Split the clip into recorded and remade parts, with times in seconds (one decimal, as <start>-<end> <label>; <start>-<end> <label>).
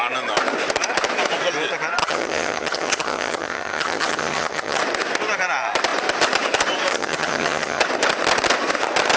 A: 0.0-2.0 recorded; 2.0-4.8 remade; 4.8-6.9 recorded; 6.9-7.8 remade; 7.8-9.2 recorded